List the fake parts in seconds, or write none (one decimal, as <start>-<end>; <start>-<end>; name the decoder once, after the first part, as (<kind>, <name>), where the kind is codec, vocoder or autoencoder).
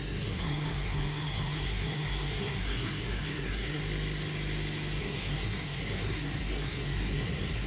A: 0.0-3.8 (codec, SNAC); 5.0-7.7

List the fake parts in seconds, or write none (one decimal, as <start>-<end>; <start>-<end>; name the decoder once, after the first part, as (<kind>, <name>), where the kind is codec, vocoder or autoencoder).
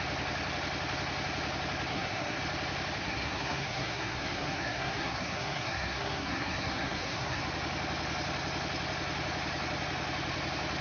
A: 1.9-2.4 (codec, SNAC); 3.0-7.4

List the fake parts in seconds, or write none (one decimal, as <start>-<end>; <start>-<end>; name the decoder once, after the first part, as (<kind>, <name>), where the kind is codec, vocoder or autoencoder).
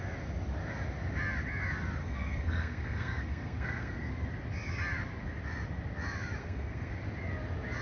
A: 2.0-4.1 (codec, SNAC); 6.4-6.9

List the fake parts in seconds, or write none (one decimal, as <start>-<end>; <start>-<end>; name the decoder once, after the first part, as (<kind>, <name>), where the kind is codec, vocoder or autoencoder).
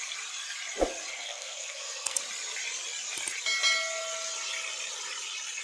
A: 1.1-2.2 (codec, SNAC)